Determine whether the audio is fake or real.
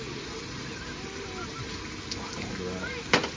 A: real